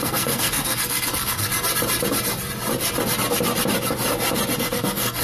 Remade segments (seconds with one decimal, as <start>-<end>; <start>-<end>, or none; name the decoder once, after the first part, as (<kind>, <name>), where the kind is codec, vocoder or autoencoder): 0.0-1.5 (codec, SNAC); 4.6-5.2